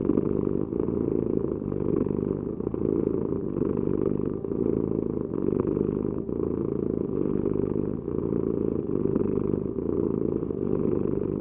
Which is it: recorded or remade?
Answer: recorded